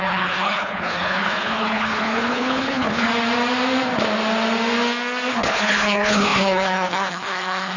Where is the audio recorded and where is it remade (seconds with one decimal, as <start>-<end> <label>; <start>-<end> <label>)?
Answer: 0.0-3.1 remade; 3.1-5.3 recorded; 5.3-7.8 remade